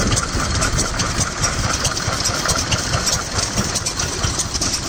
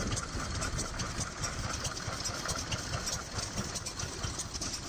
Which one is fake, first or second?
first